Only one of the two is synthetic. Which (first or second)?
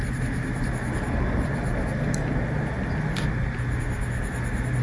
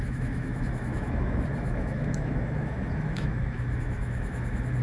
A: second